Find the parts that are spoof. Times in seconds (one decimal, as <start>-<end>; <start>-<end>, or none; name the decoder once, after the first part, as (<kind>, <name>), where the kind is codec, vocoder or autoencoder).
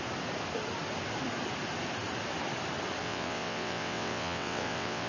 3.0-5.1 (vocoder, WaveNeXt)